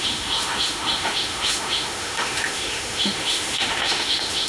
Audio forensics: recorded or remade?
remade